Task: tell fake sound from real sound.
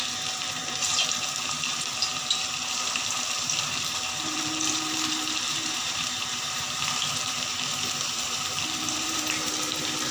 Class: fake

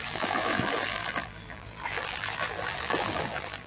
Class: fake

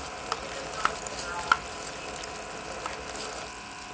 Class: real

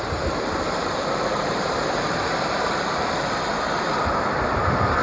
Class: fake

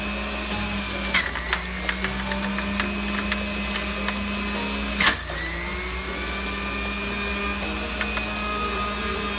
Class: real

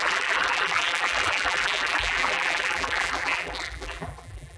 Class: fake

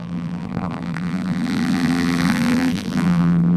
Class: fake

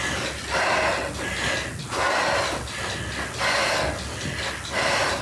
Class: real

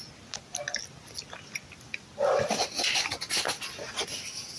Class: real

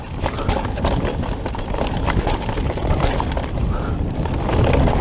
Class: real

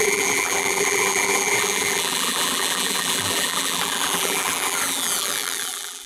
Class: fake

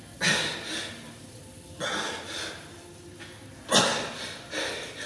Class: real